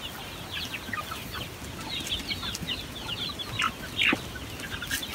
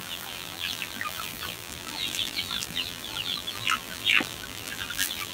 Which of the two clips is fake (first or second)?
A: second